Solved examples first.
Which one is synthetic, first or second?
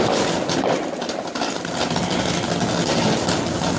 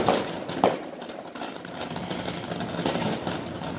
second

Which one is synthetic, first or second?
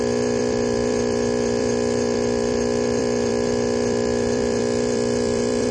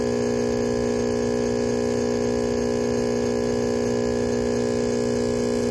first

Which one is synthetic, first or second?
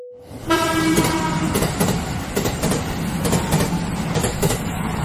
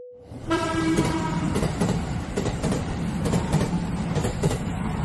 second